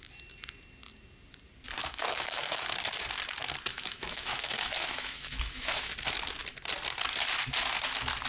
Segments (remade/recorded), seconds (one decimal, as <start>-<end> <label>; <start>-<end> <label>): 0.0-1.8 recorded; 1.8-2.6 remade; 2.6-3.7 recorded; 3.7-5.9 remade; 5.9-8.3 recorded